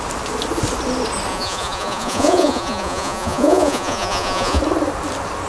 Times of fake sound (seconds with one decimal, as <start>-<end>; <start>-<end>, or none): 1.3-4.6